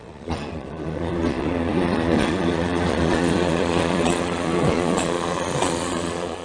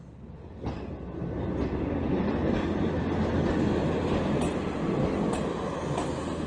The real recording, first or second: second